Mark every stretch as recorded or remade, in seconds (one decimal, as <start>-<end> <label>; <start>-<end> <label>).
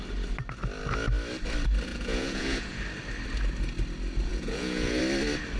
0.0-1.9 recorded; 1.9-2.8 remade; 2.8-4.3 recorded; 4.3-5.0 remade; 5.0-5.6 recorded